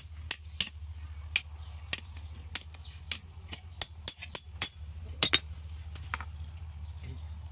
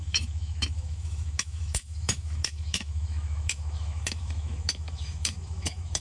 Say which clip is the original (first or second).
first